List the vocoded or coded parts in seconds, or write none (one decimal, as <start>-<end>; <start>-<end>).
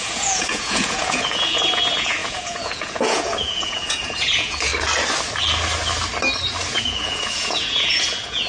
0.0-4.7; 6.7-8.5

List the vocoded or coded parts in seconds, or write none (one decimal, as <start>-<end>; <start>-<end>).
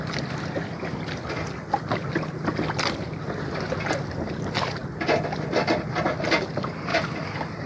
6.9-7.7